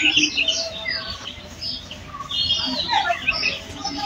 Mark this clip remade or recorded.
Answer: recorded